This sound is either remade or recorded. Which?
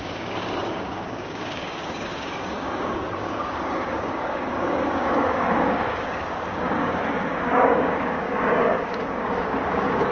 remade